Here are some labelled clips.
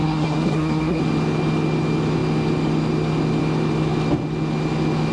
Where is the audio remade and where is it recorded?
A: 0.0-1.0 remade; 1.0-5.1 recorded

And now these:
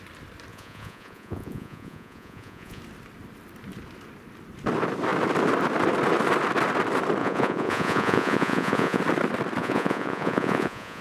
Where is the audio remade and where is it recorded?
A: 0.0-0.5 recorded; 0.5-2.8 remade; 2.8-7.2 recorded; 7.2-9.0 remade; 9.0-9.6 recorded; 9.6-11.0 remade

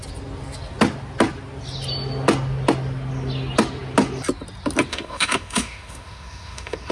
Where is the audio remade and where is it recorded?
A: 0.0-4.9 recorded; 4.9-6.9 remade

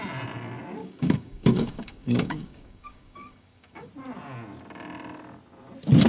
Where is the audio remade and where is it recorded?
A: 0.0-0.8 recorded; 0.8-3.9 remade; 3.9-6.1 recorded

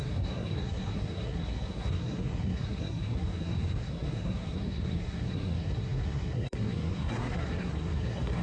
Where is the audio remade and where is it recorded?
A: 0.0-8.4 remade

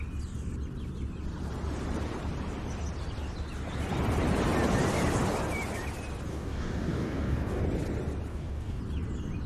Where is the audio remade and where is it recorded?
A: 0.0-6.3 recorded; 6.3-7.6 remade; 7.6-8.3 recorded; 8.3-8.8 remade; 8.8-9.5 recorded